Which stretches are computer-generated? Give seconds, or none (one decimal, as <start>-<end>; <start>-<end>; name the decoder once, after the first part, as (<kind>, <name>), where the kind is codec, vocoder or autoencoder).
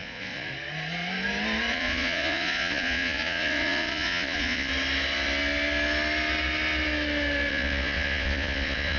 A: 0.0-0.5 (vocoder, Vocos); 1.7-4.7; 7.5-9.0